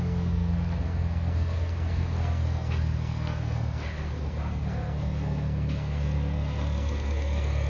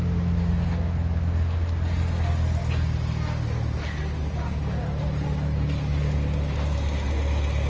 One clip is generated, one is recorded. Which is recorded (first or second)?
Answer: second